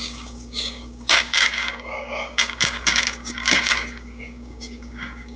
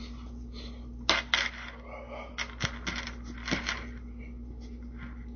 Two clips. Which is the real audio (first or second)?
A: second